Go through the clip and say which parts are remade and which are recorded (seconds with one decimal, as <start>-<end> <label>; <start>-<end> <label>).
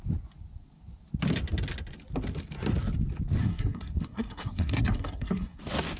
0.0-3.4 recorded; 3.4-5.6 remade; 5.6-6.0 recorded